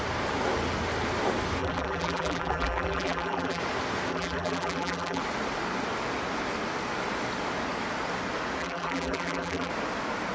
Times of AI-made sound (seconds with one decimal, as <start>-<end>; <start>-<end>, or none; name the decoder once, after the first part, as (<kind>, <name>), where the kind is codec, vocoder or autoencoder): 1.6-3.6 (vocoder, BigVGAN v2); 4.1-5.2; 8.6-9.7